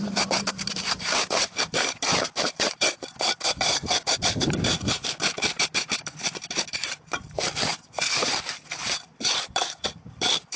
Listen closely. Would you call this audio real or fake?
fake